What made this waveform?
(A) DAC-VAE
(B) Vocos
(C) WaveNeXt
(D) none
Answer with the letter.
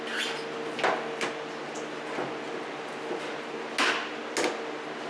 D